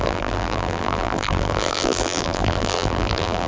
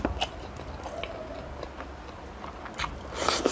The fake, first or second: first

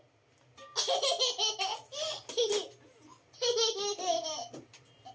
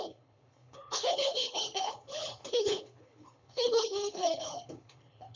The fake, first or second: second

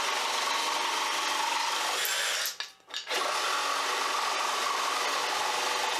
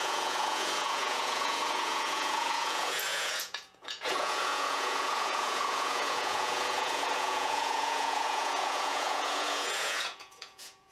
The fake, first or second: second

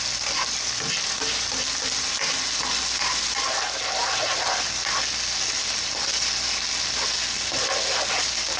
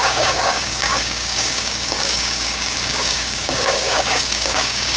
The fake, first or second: second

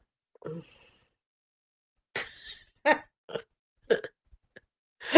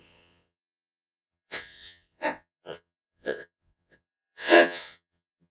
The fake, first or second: second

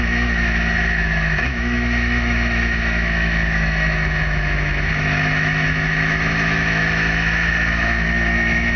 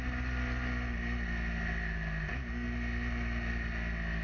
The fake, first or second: first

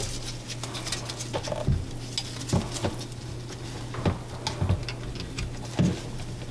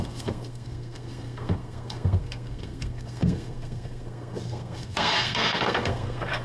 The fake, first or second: second